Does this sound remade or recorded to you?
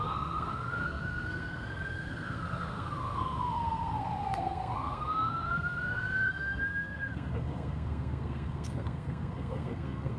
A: remade